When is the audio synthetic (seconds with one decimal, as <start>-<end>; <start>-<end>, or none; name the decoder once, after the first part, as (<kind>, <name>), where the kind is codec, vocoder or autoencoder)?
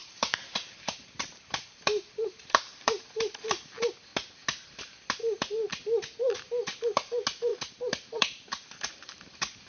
0.0-3.4 (vocoder, BigVGAN v2); 7.5-8.9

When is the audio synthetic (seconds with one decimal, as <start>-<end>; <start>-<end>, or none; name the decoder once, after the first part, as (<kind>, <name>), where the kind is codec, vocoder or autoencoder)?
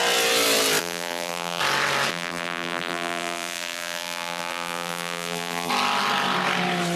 0.8-1.6 (vocoder, BigVGAN v2); 2.1-5.7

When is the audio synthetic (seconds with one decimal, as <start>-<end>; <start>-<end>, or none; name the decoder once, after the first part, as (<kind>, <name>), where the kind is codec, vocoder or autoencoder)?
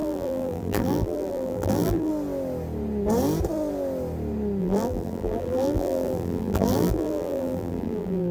0.0-2.1 (vocoder, BigVGAN v2); 4.6-8.3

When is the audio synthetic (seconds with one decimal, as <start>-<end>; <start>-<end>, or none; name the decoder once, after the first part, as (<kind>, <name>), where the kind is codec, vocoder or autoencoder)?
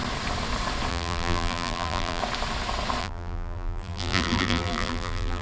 0.9-2.2 (vocoder, BigVGAN v2); 3.0-5.4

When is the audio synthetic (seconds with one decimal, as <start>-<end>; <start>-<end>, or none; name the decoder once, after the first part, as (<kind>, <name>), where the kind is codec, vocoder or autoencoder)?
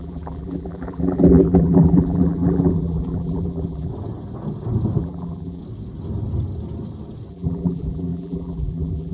0.0-3.9 (vocoder, BigVGAN v2); 5.0-5.6; 7.3-9.1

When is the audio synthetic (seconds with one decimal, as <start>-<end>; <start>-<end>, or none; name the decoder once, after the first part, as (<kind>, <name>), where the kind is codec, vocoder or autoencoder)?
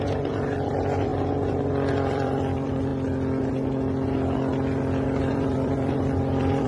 0.0-1.1 (vocoder, BigVGAN v2); 1.9-2.9; 5.2-6.7